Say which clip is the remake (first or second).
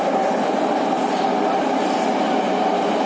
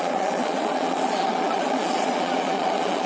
second